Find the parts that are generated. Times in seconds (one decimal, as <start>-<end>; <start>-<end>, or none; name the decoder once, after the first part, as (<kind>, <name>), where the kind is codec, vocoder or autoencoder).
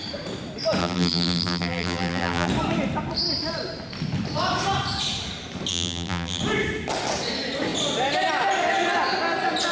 0.8-2.5 (vocoder, BigVGAN v2); 5.7-6.4